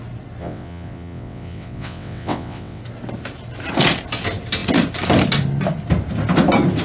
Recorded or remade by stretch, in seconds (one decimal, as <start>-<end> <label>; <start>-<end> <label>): 0.0-0.4 recorded; 0.4-2.8 remade; 2.8-6.8 recorded

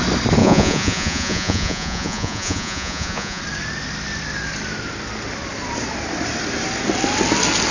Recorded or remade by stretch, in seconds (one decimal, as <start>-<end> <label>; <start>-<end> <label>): 0.0-0.4 recorded; 0.4-3.4 remade; 3.4-7.7 recorded

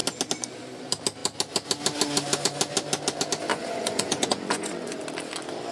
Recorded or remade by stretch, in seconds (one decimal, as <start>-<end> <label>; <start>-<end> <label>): 0.0-3.5 recorded; 3.5-5.0 remade; 5.0-5.7 recorded

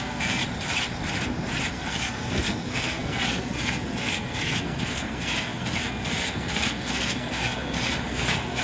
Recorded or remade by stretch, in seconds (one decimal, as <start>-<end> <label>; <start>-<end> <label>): 0.0-0.4 remade; 0.4-1.7 recorded; 1.7-8.6 remade

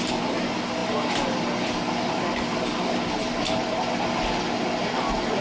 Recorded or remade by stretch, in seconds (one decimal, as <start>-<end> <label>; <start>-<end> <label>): 0.0-5.4 recorded

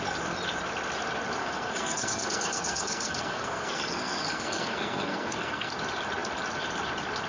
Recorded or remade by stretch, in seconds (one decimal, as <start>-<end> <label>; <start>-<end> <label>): 0.0-1.4 recorded; 1.4-5.7 remade; 5.7-7.3 recorded